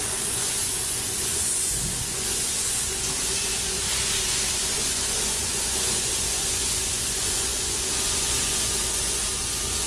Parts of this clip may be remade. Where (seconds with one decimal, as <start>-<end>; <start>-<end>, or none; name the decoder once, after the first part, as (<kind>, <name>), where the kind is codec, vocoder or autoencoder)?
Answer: 0.0-9.9 (vocoder, Vocos)